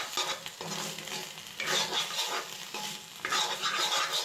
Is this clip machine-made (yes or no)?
no